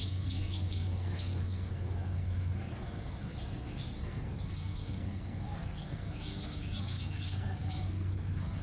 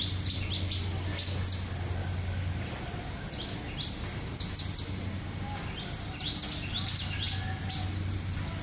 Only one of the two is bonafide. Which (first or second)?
second